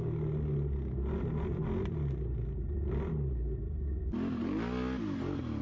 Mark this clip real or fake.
real